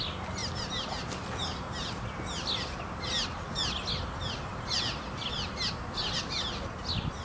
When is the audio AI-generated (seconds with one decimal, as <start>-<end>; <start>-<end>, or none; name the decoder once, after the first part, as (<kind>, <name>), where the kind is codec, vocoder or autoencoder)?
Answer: none